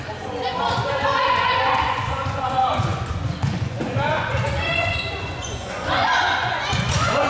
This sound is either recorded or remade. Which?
remade